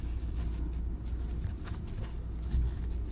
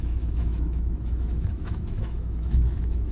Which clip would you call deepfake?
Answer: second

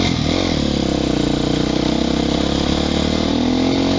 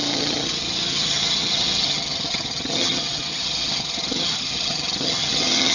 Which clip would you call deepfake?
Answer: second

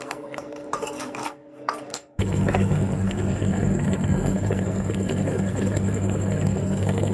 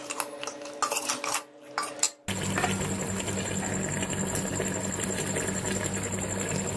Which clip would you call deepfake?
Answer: first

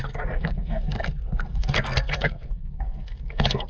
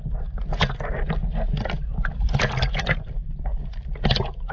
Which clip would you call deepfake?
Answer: first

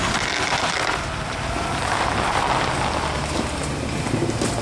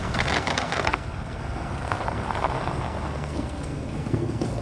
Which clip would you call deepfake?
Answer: second